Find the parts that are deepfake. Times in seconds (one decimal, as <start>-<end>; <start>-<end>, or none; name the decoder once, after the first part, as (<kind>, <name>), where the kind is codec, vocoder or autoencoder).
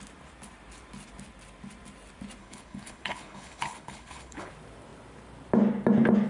2.4-4.5 (codec, HILCodec)